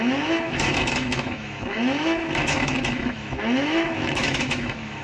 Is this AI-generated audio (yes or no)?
yes